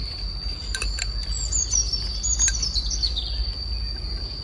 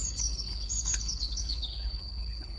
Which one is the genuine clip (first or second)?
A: first